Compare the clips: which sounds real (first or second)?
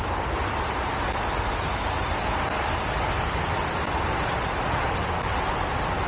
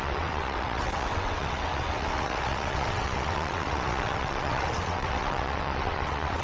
first